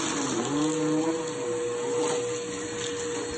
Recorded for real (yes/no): yes